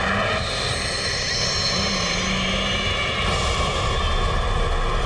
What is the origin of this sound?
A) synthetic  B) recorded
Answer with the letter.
B